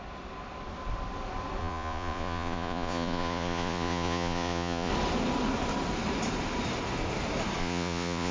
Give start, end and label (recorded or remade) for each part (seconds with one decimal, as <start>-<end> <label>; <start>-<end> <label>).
0.0-1.6 recorded; 1.6-4.9 remade; 4.9-7.6 recorded; 7.6-8.3 remade